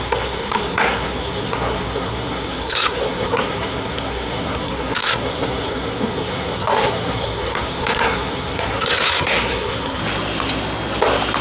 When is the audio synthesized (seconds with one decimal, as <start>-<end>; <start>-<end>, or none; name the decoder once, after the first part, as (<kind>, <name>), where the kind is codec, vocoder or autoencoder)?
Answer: 0.0-10.0 (codec, SNAC)